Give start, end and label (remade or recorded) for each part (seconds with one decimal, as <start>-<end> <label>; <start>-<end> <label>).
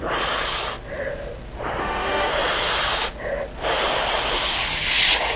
0.0-1.8 recorded; 1.8-2.3 remade; 2.3-5.4 recorded